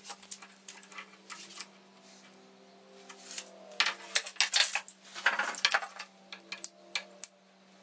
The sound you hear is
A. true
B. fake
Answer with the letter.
A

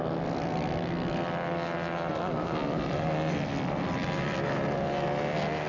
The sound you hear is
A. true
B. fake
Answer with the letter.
A